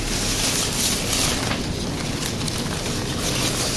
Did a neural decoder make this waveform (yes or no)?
no